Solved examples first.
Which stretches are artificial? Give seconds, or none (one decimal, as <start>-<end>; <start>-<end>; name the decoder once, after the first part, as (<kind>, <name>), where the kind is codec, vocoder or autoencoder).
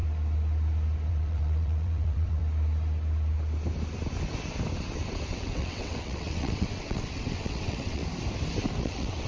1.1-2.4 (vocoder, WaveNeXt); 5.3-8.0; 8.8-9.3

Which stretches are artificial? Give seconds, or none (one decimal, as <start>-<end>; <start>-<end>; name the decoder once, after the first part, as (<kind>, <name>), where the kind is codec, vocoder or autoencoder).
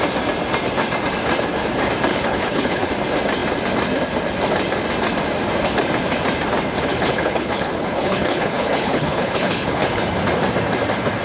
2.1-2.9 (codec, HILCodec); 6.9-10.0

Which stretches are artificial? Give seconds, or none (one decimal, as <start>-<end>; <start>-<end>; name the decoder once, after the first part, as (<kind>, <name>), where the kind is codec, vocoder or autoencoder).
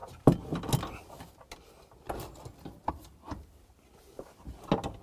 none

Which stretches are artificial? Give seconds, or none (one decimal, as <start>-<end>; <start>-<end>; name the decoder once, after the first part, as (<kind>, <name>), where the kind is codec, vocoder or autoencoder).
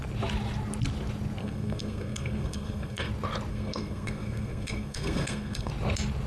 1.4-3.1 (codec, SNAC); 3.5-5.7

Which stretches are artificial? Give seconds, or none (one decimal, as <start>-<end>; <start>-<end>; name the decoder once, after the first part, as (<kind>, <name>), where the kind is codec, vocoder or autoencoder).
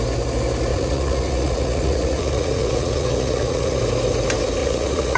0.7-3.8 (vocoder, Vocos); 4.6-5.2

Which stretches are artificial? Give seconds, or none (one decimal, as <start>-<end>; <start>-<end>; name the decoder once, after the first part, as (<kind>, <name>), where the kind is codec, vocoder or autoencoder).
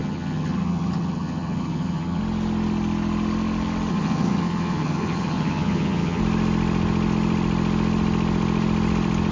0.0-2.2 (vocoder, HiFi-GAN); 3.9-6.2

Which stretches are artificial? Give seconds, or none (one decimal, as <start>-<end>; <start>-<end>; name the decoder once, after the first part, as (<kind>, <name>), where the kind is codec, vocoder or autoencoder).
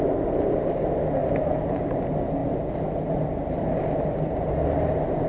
1.2-2.0 (vocoder, BigVGAN v2)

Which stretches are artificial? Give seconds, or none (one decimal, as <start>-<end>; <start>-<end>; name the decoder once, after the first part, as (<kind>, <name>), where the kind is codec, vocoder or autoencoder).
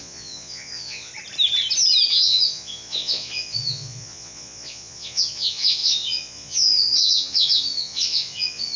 0.0-1.1 (vocoder, Vocos); 2.1-8.8